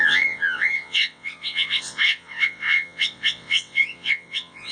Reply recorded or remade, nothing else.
remade